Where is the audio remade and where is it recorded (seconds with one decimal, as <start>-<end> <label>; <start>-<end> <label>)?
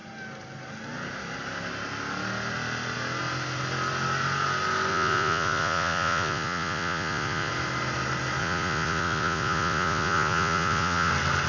0.0-4.9 recorded; 4.9-7.5 remade; 7.5-8.4 recorded; 8.4-11.1 remade; 11.1-11.5 recorded